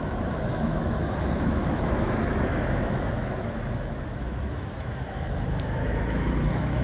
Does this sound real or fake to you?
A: fake